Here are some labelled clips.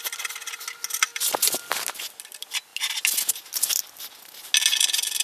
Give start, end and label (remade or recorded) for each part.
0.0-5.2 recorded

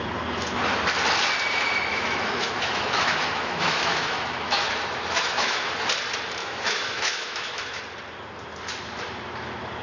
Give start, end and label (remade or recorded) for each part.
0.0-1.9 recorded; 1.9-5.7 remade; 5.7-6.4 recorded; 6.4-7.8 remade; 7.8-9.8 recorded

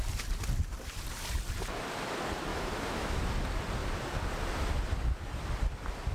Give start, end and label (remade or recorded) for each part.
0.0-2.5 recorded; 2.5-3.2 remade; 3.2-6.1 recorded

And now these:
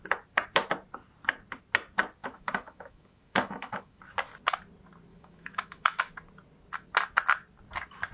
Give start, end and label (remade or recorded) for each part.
0.0-2.2 recorded; 2.2-4.0 remade; 4.0-5.1 recorded; 5.1-6.0 remade; 6.0-8.1 recorded